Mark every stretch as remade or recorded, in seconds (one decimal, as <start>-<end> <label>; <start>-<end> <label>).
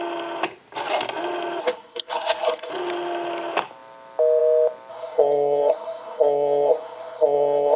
0.0-1.6 recorded; 1.6-2.7 remade; 2.7-4.9 recorded; 4.9-7.8 remade